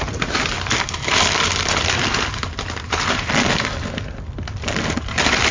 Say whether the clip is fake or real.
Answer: real